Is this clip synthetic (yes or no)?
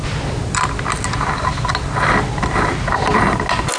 no